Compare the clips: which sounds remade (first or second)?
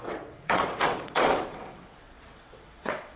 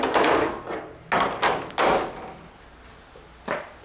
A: first